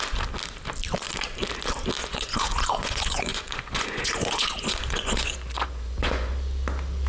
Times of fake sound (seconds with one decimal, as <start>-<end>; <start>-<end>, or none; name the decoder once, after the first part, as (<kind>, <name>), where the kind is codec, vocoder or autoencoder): 2.0-6.3 (vocoder, Vocos)